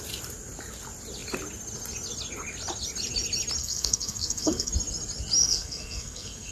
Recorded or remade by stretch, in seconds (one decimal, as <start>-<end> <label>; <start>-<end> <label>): 0.0-3.6 recorded; 3.6-4.7 remade; 4.7-5.4 recorded; 5.4-6.5 remade